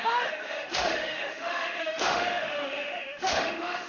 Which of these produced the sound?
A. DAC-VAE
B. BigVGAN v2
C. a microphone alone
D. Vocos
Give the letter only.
A